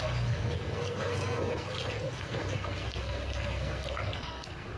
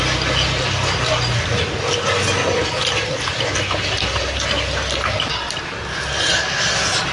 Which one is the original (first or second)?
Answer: second